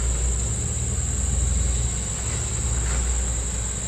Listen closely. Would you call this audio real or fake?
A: real